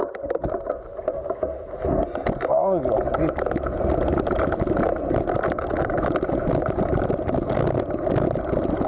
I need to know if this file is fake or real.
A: real